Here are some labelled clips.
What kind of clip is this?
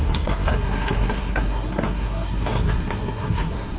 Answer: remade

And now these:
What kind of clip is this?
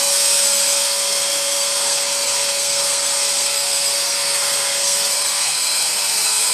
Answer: remade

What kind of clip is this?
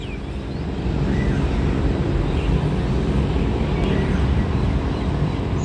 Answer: recorded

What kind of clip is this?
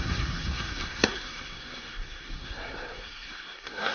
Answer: remade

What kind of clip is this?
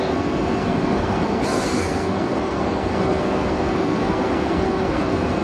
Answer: remade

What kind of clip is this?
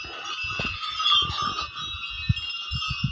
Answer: recorded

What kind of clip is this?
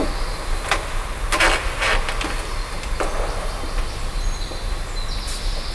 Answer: recorded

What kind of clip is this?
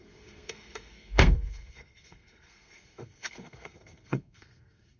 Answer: remade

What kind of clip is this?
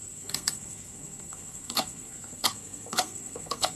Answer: remade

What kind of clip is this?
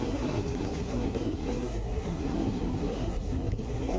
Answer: remade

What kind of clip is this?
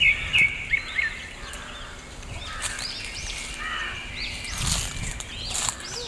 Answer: recorded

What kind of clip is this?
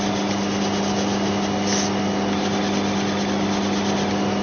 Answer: recorded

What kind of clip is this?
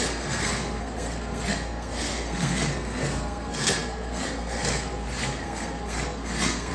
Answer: remade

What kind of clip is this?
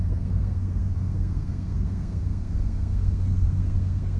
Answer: remade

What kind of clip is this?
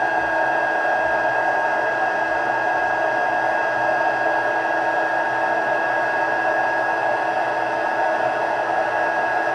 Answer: recorded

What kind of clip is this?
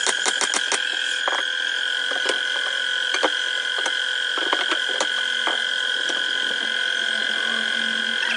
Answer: recorded